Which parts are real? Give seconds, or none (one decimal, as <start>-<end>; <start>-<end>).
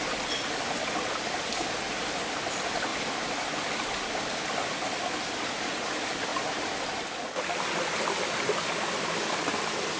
0.0-10.0